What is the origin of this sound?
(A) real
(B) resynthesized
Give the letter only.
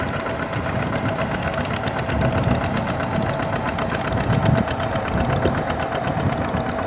A